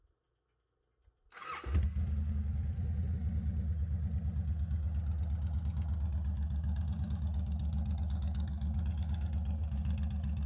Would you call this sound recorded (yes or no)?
yes